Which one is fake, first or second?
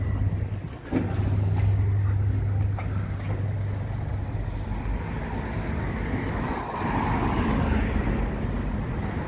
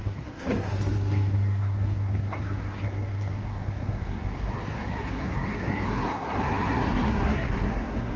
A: second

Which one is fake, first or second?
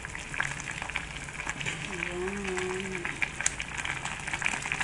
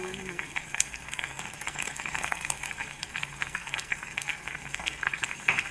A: second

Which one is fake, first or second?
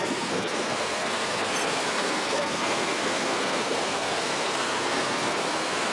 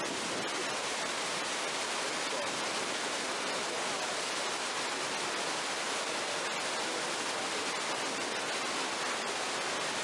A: first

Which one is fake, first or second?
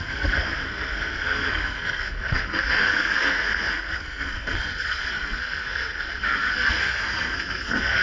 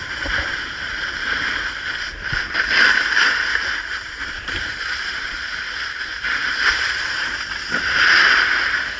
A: first